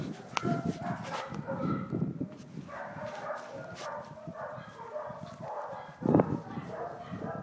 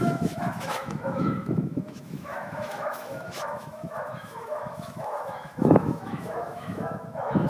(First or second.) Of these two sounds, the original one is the first